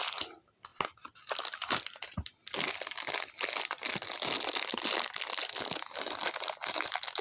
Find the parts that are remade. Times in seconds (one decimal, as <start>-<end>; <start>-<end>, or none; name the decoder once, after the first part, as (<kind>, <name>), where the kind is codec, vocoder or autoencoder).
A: none